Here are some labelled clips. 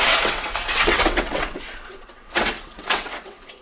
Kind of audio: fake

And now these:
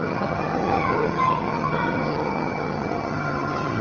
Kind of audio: fake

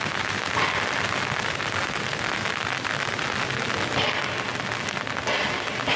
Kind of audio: real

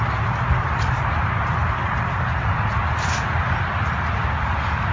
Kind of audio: real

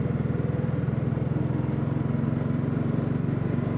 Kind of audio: real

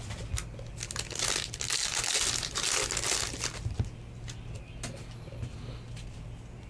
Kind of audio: real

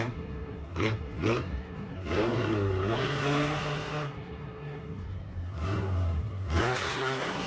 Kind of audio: fake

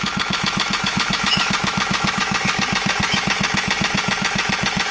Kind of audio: fake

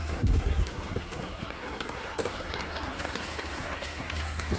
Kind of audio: fake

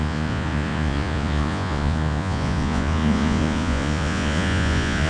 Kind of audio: fake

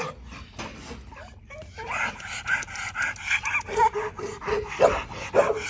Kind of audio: real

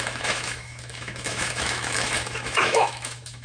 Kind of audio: fake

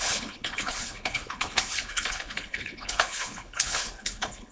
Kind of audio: fake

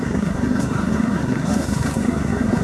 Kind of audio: fake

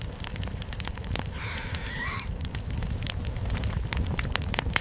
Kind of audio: fake